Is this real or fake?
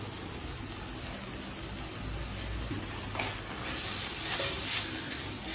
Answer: real